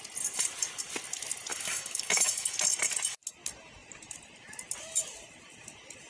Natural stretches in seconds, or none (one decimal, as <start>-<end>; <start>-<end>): 0.0-1.5; 2.5-6.1